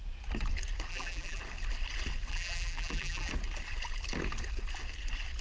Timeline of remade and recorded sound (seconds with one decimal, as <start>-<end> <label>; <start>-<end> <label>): 0.0-0.9 recorded; 0.9-1.4 remade; 1.4-2.3 recorded; 2.3-3.3 remade; 3.3-5.4 recorded